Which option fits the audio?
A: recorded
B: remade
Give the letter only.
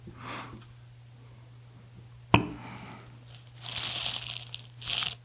A